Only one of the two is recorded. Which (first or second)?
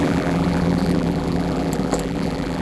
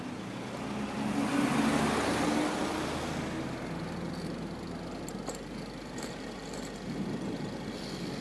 second